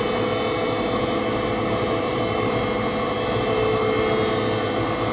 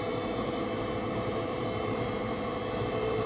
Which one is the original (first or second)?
first